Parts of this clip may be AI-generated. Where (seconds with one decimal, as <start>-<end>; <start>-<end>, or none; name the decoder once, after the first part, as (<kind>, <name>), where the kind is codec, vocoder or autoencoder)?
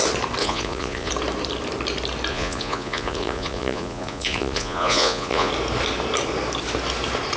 0.4-1.1 (vocoder, Vocos); 2.3-5.5